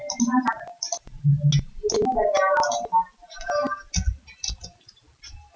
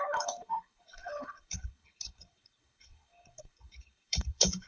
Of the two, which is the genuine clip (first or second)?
first